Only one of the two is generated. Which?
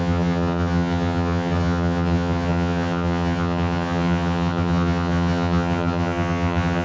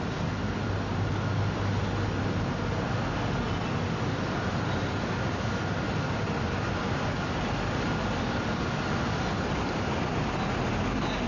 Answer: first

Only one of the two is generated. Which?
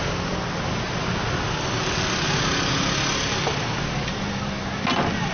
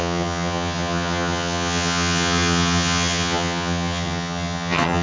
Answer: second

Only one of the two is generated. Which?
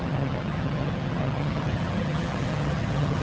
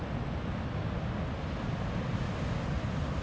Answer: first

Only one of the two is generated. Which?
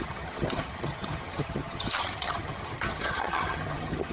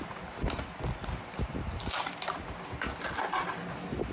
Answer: first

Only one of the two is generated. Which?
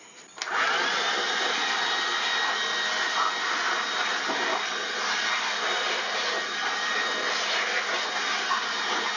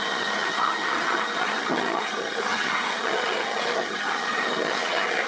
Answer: second